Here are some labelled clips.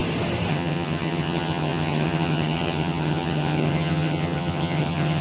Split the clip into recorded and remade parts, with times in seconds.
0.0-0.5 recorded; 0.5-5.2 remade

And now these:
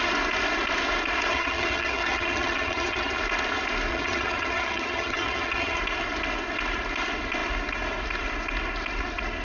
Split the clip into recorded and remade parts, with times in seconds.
0.0-1.3 recorded; 1.3-3.2 remade; 3.2-3.9 recorded; 3.9-5.8 remade; 5.8-9.4 recorded

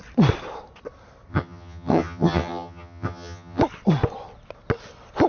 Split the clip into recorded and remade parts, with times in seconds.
0.0-1.3 recorded; 1.3-3.6 remade; 3.6-5.3 recorded

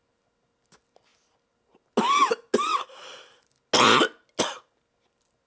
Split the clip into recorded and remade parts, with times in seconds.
0.0-5.5 recorded

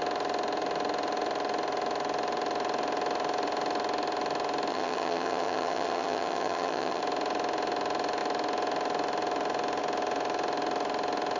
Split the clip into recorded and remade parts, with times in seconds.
0.0-4.7 recorded; 4.7-7.0 remade; 7.0-11.4 recorded

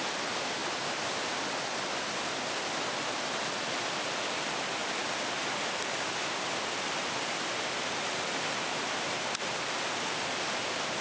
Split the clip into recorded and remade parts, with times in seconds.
0.0-11.0 recorded

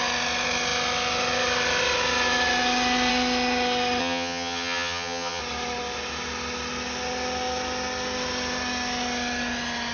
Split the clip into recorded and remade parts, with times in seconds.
0.0-4.0 recorded; 4.0-5.4 remade; 5.4-9.9 recorded

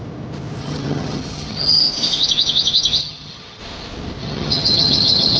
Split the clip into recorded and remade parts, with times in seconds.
0.0-0.6 recorded; 0.6-1.8 remade; 1.8-3.0 recorded; 3.0-3.6 remade; 3.6-4.2 recorded; 4.2-5.4 remade